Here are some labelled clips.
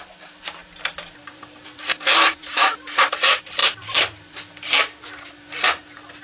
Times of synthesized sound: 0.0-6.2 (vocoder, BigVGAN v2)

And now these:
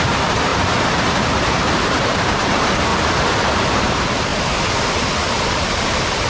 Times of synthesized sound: 0.0-0.5 (vocoder, BigVGAN v2); 1.6-2.9; 3.6-4.3; 5.5-6.3

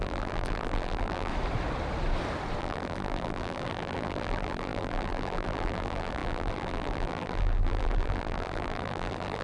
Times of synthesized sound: 0.0-1.3 (vocoder, BigVGAN v2); 2.6-9.4

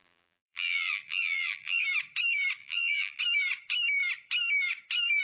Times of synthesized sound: 0.0-1.8 (vocoder, BigVGAN v2); 2.6-3.2